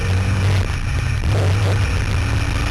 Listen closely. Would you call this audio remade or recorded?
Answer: recorded